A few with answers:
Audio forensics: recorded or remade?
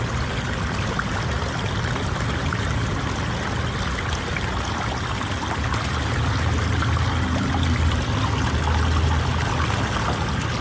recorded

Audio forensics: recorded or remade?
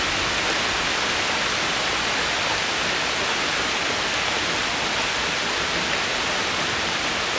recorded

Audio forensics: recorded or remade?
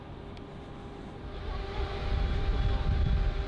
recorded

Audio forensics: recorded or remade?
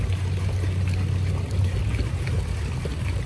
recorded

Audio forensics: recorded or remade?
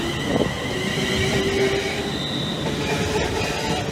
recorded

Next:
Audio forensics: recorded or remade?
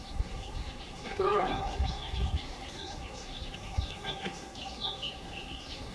remade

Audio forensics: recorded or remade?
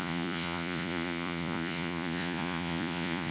remade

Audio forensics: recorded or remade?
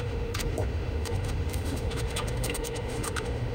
remade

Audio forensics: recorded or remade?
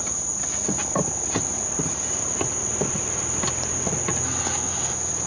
recorded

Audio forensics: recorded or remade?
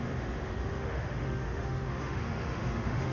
remade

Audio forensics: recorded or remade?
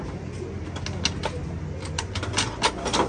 recorded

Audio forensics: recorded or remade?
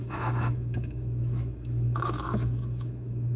remade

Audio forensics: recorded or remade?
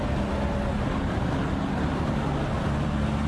recorded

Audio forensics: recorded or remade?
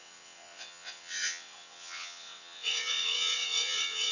remade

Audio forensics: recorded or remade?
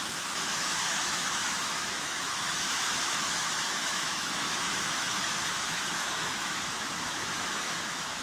remade